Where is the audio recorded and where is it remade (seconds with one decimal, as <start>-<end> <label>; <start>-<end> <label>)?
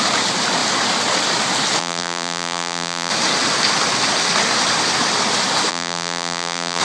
0.0-1.8 recorded; 1.8-3.1 remade; 3.1-5.7 recorded; 5.7-6.8 remade